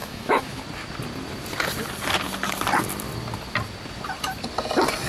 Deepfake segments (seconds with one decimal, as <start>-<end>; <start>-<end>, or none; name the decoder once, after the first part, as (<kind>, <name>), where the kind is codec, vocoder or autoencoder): 0.0-0.6 (autoencoder, DAC-VAE)